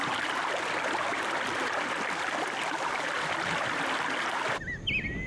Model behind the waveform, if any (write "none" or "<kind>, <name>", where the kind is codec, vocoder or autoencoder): none